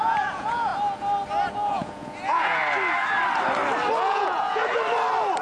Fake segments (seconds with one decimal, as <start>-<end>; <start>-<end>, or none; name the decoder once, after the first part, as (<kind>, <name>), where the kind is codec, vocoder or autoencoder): 0.0-0.7 (vocoder, Vocos); 1.4-2.6; 4.0-4.6